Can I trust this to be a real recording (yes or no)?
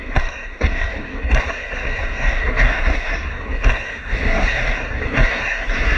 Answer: no